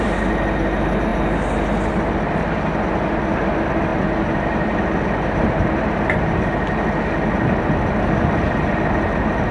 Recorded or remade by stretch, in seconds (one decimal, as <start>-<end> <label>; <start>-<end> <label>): 0.0-9.5 recorded